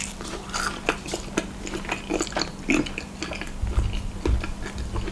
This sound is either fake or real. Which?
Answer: real